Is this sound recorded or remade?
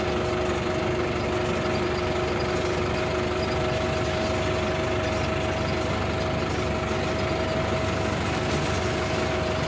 recorded